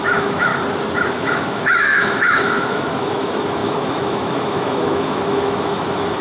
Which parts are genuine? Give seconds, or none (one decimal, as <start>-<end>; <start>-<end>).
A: 0.5-1.2